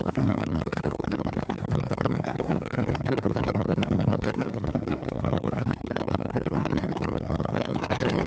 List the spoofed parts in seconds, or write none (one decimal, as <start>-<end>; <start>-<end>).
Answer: 0.0-8.3